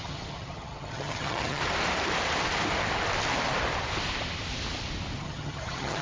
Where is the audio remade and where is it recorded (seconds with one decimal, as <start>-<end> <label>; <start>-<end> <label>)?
0.0-1.6 remade; 1.6-5.2 recorded; 5.2-6.0 remade